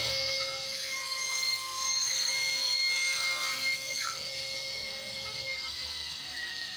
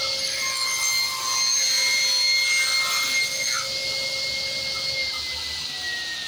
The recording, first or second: second